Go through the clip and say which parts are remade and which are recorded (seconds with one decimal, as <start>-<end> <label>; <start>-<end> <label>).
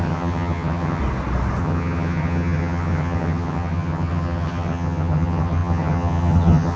0.0-1.0 remade; 1.0-1.6 recorded; 1.6-6.8 remade